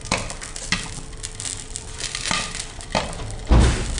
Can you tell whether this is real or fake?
real